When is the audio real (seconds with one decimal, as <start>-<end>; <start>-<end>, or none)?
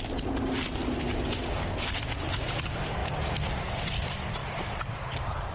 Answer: 0.0-0.8; 1.4-4.4